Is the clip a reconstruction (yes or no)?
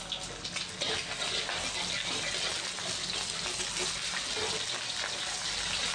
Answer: no